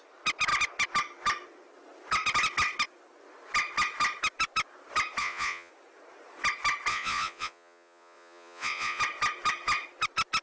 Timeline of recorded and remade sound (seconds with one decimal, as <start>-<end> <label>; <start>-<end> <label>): 0.0-5.2 recorded; 5.2-5.7 remade; 5.7-6.9 recorded; 6.9-9.0 remade; 9.0-10.4 recorded